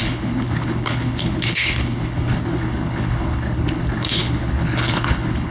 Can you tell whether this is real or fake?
fake